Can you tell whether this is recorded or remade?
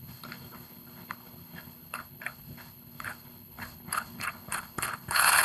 remade